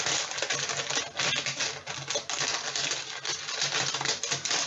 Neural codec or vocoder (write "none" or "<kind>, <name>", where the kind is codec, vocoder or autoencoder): none